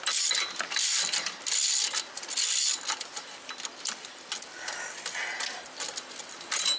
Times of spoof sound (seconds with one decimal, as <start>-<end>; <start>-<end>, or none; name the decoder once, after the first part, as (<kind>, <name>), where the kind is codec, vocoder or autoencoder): none